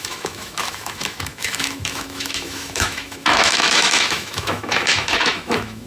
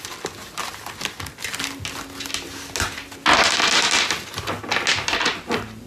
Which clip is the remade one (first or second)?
first